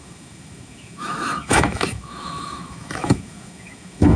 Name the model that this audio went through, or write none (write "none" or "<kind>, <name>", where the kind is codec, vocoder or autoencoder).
autoencoder, DAC-VAE